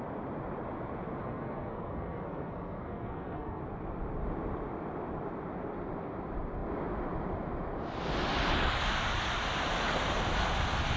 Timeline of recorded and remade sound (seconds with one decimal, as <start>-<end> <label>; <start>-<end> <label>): 0.0-1.2 recorded; 1.2-3.6 remade; 3.6-11.0 recorded